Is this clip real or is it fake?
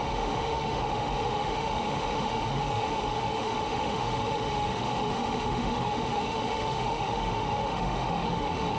fake